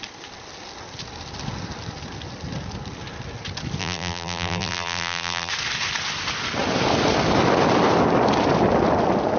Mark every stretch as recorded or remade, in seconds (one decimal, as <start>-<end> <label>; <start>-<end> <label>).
0.0-3.8 recorded; 3.8-5.5 remade; 5.5-9.4 recorded